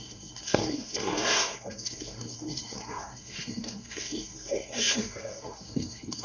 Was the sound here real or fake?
fake